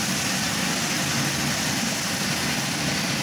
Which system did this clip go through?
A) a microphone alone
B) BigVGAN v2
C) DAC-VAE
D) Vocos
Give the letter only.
A